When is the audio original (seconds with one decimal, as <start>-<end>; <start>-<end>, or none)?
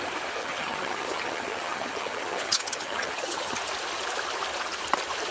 0.0-0.4; 3.6-5.3